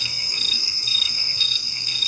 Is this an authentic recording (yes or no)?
no